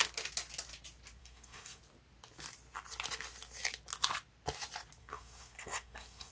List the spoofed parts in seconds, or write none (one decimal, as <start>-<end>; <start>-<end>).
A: 1.2-1.8; 5.0-6.3